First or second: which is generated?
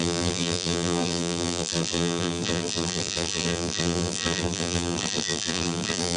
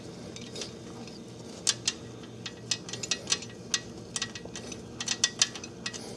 first